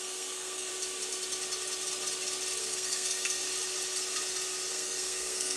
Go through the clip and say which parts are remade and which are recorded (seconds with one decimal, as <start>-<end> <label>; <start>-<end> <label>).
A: 0.0-0.7 remade; 0.7-2.6 recorded; 2.6-3.4 remade; 3.4-4.7 recorded; 4.7-5.6 remade